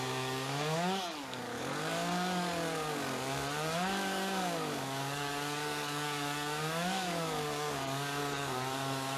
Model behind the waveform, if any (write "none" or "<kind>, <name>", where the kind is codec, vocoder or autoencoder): codec, DAC